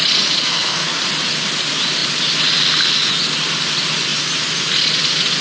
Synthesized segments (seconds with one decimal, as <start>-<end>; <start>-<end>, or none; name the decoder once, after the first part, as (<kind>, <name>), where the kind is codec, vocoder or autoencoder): 0.4-1.0 (codec, SNAC)